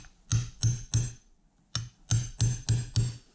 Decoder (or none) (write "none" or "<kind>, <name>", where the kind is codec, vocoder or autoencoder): none